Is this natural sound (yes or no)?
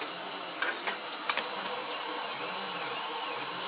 yes